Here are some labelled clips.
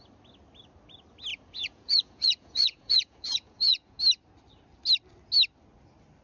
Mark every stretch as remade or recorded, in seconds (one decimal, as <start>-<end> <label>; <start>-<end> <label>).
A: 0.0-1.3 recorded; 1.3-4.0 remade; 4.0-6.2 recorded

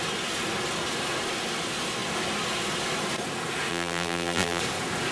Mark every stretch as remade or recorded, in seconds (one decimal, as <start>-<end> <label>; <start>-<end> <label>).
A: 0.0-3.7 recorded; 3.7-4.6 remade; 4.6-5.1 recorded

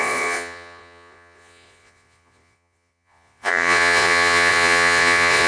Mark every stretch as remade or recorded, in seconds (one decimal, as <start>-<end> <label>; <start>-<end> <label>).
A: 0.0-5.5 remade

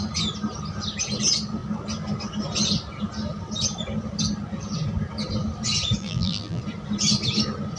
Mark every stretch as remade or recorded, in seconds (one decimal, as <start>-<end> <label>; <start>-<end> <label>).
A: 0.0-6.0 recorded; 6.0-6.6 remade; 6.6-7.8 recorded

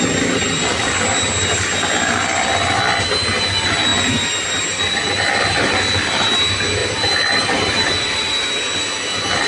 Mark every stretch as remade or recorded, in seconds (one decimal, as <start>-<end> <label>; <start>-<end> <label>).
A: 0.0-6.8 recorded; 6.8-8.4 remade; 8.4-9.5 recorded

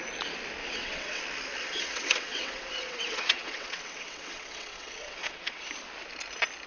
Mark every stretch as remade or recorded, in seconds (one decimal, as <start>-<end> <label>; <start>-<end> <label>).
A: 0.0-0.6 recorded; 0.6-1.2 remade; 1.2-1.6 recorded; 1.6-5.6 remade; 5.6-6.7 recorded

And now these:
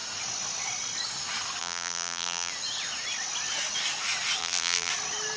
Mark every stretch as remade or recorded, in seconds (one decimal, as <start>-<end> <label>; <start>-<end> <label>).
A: 0.0-1.6 recorded; 1.6-2.5 remade; 2.5-4.4 recorded; 4.4-4.9 remade; 4.9-5.4 recorded

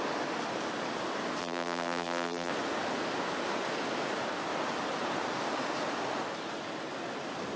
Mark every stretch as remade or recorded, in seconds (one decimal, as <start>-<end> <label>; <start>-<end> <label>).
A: 0.0-1.4 recorded; 1.4-2.5 remade; 2.5-7.6 recorded